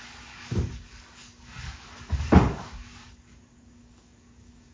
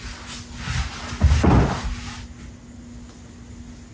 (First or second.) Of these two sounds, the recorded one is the second